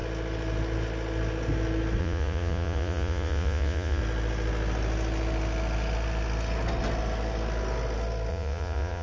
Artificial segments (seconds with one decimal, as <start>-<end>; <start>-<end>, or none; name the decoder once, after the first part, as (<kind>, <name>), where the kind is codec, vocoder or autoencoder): 2.0-4.0 (vocoder, Vocos); 8.3-9.0

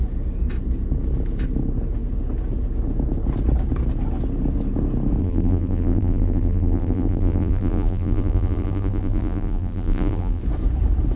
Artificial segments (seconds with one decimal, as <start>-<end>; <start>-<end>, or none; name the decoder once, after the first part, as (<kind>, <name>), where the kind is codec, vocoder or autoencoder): 5.2-10.4 (vocoder, BigVGAN v2)

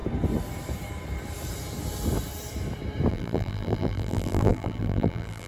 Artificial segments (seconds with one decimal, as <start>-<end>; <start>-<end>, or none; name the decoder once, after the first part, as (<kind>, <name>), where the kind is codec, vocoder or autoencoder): 3.1-5.5 (vocoder, BigVGAN v2)